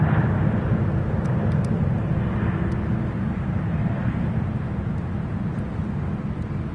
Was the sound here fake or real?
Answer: real